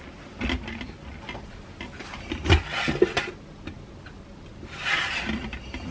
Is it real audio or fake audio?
real